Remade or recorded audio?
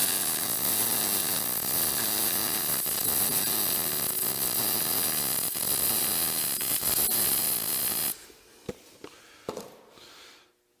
recorded